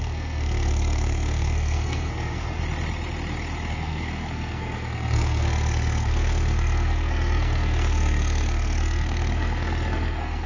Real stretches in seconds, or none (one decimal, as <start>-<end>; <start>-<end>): 2.6-3.7